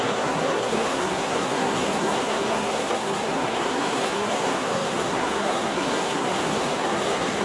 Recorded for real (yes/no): no